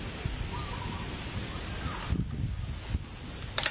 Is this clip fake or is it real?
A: real